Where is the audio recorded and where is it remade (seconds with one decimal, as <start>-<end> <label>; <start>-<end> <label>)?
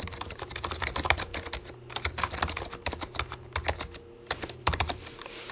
0.0-1.3 remade; 1.3-4.6 recorded; 4.6-5.5 remade